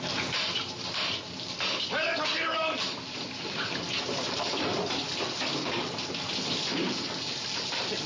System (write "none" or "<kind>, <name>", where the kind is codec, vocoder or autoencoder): none